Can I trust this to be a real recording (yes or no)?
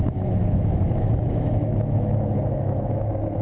no